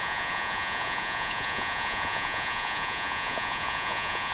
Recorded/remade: remade